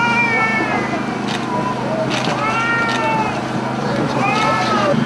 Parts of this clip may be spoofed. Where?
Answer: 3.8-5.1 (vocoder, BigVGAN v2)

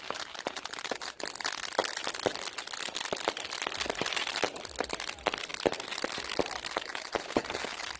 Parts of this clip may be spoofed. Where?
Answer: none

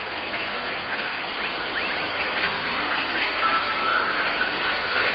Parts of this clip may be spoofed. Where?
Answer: 0.0-1.2 (codec, SNAC); 2.1-5.1

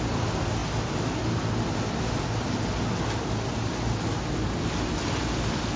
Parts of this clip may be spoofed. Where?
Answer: none